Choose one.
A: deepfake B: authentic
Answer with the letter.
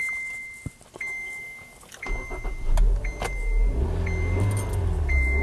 B